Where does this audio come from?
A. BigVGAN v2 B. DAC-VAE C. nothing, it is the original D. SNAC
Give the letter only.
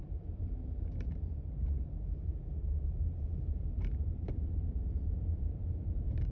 A